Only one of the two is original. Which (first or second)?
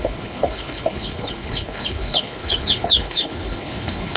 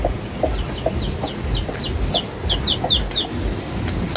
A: second